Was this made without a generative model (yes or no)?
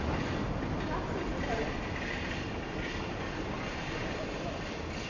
yes